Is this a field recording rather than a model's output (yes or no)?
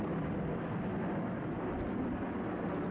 yes